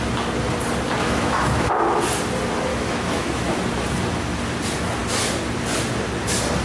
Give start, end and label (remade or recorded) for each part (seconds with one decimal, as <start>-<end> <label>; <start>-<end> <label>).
0.0-1.0 recorded; 1.0-1.7 remade; 1.7-2.7 recorded; 2.7-3.6 remade; 3.6-6.6 recorded